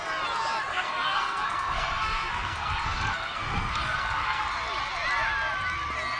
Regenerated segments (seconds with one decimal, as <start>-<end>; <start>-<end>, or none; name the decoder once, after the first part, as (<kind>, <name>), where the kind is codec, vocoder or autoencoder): 0.7-4.4 (codec, SNAC)